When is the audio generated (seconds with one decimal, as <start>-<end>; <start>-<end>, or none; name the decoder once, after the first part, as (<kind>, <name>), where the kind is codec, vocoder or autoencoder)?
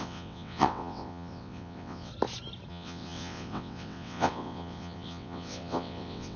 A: 0.0-2.1 (vocoder, WaveNeXt); 2.7-6.4